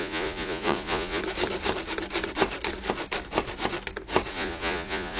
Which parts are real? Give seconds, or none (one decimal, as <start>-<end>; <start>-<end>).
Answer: 1.2-4.3